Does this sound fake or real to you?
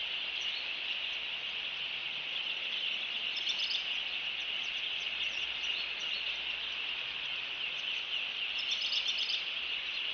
real